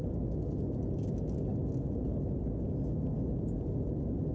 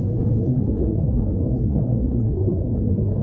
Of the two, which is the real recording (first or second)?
first